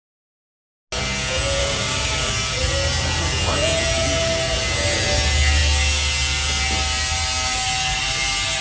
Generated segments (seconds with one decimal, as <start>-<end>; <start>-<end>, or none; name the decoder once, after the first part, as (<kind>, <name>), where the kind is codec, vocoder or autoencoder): 1.6-2.3 (codec, DAC)